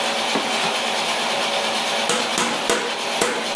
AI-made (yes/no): no